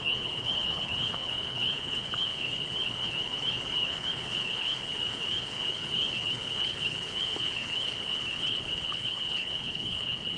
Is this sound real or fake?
fake